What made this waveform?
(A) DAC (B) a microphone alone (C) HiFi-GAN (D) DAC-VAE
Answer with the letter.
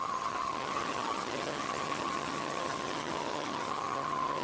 C